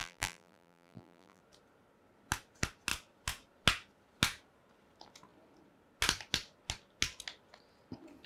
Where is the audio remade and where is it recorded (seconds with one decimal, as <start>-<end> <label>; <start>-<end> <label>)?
0.0-1.4 remade; 1.4-8.3 recorded